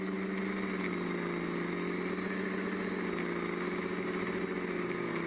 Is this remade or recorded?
recorded